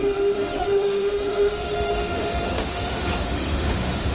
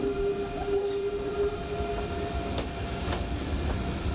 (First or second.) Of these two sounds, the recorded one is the second